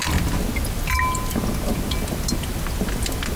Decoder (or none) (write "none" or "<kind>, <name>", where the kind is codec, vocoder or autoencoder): none